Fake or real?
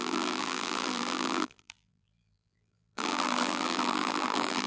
fake